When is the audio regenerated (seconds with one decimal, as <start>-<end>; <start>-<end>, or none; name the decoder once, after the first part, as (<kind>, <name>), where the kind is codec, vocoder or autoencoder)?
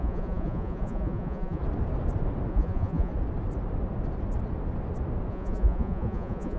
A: 0.0-1.6 (vocoder, Vocos); 2.5-3.1; 5.3-6.6